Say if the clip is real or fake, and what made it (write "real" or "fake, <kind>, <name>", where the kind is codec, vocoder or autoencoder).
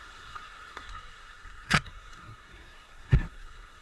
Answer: fake, codec, SNAC